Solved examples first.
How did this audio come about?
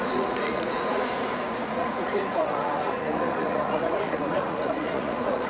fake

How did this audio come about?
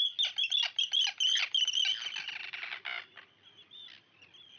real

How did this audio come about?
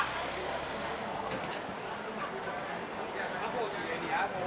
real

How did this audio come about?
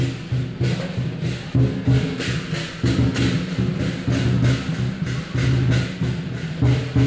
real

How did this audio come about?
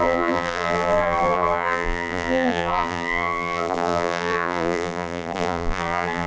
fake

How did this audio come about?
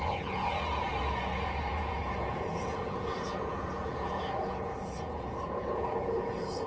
fake